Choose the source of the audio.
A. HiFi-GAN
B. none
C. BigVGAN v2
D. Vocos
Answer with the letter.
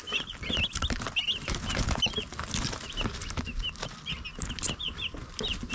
B